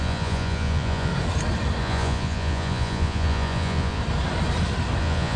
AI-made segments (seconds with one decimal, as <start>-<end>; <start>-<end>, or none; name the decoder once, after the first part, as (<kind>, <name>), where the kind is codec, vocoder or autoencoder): 0.0-1.1 (vocoder, Vocos); 1.8-4.0; 5.0-5.4